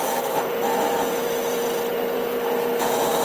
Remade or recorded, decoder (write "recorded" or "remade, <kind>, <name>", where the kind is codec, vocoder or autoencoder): recorded